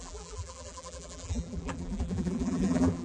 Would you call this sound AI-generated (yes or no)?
yes